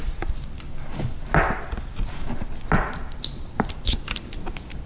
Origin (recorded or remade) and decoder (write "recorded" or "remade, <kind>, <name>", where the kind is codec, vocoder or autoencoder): recorded